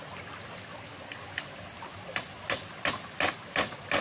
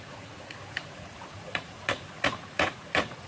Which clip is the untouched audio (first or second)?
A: first